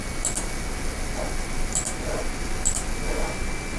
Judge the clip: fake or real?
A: real